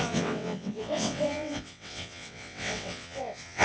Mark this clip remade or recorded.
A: remade